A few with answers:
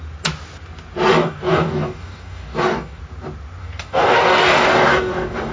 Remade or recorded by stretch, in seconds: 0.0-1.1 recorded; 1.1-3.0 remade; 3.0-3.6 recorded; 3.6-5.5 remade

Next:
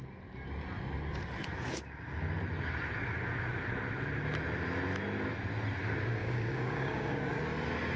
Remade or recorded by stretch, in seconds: 0.0-6.2 recorded; 6.2-7.4 remade; 7.4-8.0 recorded

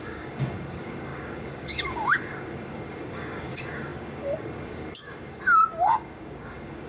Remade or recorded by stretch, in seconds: 0.0-6.9 remade

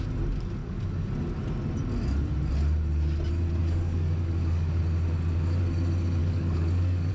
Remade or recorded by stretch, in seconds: 0.0-0.6 recorded; 0.6-1.1 remade; 1.1-3.6 recorded; 3.6-4.8 remade; 4.8-6.2 recorded; 6.2-7.1 remade